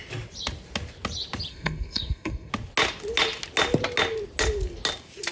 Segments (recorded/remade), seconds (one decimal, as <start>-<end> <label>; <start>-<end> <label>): 0.0-1.5 recorded; 1.5-2.5 remade; 2.5-5.3 recorded